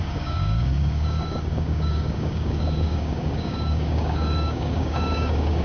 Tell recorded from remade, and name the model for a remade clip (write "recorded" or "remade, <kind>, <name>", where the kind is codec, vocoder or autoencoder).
remade, codec, DAC